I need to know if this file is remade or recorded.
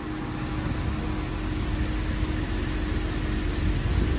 recorded